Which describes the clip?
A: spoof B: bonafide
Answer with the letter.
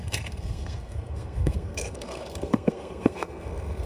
A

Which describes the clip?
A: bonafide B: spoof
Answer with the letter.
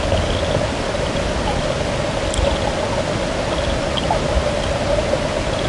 A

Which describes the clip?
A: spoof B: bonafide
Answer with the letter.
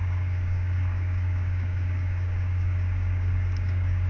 A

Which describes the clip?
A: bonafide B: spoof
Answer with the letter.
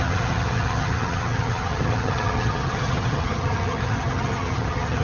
B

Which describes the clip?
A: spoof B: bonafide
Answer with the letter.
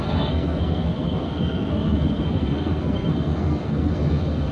A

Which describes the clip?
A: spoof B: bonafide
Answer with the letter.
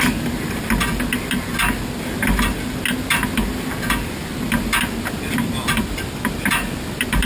B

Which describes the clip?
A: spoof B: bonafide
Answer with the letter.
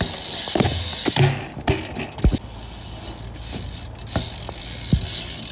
B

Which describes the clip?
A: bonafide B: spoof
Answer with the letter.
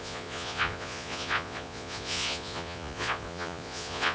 B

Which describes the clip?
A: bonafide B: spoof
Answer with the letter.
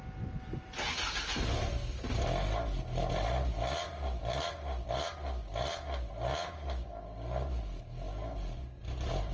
A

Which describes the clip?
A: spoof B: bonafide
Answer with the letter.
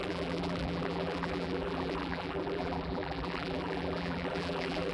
A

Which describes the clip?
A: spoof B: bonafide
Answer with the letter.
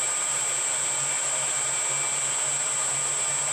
B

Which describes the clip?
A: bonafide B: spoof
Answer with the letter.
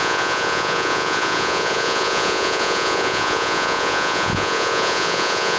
B